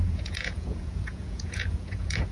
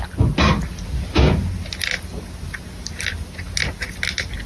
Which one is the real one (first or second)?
second